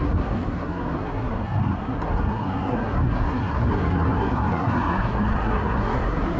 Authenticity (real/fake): fake